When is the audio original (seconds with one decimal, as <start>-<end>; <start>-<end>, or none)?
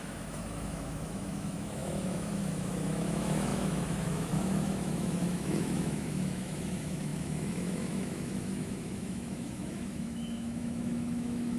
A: none